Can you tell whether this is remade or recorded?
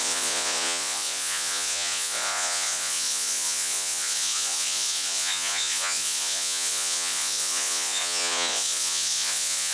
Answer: remade